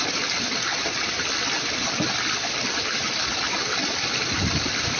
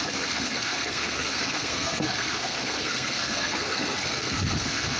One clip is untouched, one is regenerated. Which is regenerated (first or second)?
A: second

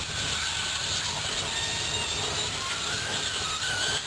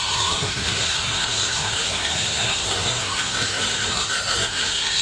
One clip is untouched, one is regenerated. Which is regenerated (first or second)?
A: second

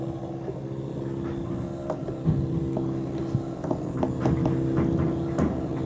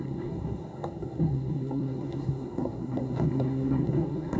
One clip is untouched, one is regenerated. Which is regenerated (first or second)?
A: second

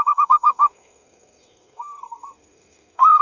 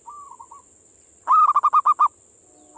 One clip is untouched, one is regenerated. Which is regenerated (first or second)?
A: first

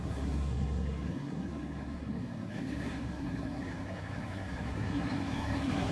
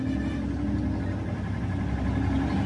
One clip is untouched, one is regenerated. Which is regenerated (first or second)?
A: first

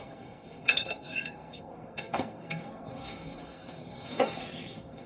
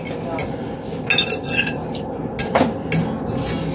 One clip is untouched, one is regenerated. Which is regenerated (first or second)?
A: first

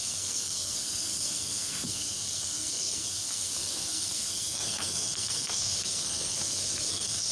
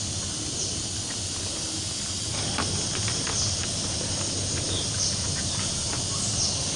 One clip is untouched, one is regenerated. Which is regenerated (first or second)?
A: first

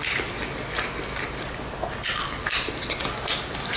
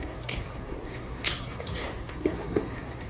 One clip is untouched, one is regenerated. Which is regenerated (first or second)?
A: second